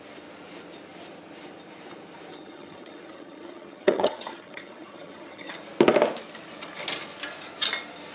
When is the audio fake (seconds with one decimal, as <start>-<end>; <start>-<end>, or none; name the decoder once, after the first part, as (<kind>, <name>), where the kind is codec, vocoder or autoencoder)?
2.3-5.5 (vocoder, HiFi-GAN)